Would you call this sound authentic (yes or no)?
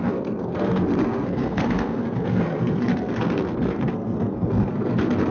no